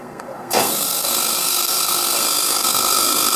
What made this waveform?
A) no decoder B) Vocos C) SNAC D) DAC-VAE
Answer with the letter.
C